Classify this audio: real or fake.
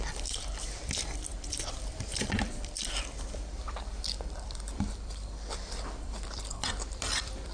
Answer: fake